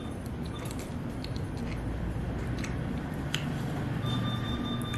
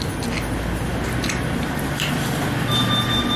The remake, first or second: first